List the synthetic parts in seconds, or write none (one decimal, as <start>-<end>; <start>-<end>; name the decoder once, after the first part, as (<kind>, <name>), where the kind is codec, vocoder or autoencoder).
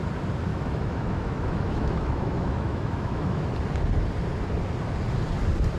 0.5-3.5 (autoencoder, DAC-VAE)